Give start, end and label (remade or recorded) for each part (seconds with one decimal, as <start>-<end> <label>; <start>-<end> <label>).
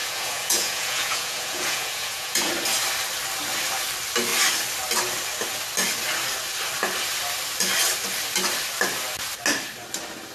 0.0-2.5 remade; 2.5-10.3 recorded